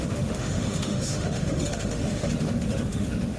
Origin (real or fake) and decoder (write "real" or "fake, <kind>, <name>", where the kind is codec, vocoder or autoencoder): fake, autoencoder, DAC-VAE